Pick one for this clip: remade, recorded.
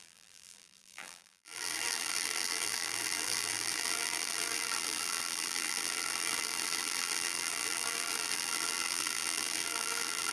remade